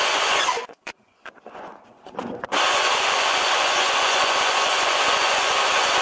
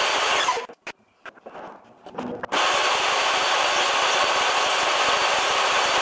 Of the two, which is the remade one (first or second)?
first